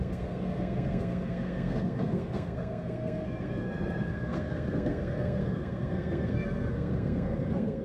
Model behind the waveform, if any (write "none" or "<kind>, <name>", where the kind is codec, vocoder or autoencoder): codec, SNAC